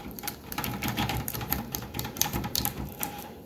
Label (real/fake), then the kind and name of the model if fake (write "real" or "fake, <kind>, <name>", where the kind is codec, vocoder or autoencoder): fake, vocoder, BigVGAN v2